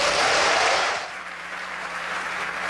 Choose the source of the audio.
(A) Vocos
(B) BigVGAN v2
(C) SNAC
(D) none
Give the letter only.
B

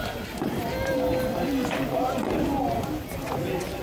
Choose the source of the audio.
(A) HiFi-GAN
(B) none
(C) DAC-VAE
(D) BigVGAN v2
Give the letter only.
B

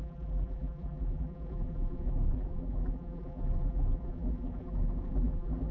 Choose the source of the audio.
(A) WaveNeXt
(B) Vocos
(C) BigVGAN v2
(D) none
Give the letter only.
C